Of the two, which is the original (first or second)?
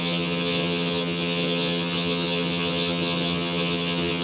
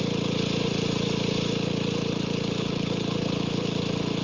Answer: second